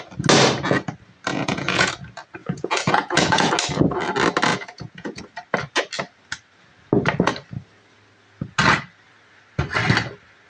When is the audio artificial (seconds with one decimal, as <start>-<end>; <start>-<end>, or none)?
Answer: 1.3-1.9; 2.4-3.5; 4.5-5.2